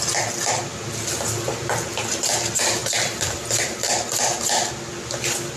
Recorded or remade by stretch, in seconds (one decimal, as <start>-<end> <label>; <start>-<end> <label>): 0.0-5.6 recorded